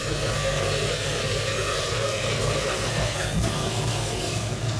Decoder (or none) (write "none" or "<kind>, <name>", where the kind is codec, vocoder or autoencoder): codec, SNAC